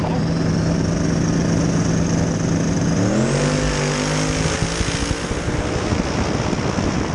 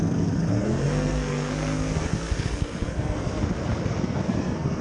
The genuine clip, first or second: first